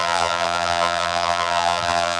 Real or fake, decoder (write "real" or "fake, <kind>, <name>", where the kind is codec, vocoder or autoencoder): fake, vocoder, BigVGAN v2